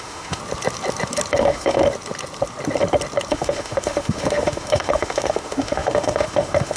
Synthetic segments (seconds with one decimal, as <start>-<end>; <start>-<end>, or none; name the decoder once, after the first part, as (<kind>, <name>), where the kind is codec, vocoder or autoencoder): 0.0-0.4 (autoencoder, DAC-VAE); 1.4-1.8; 3.3-6.8